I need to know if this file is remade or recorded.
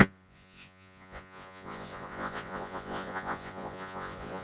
remade